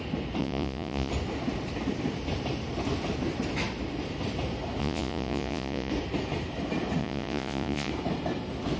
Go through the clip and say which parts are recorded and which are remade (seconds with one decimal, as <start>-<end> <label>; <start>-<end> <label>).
0.0-0.4 recorded; 0.4-1.1 remade; 1.1-4.8 recorded; 4.8-5.9 remade; 5.9-7.0 recorded; 7.0-7.9 remade; 7.9-8.8 recorded